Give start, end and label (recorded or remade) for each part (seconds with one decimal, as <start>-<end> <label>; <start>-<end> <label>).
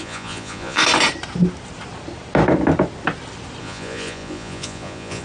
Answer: 0.0-0.8 remade; 0.8-3.6 recorded; 3.6-5.2 remade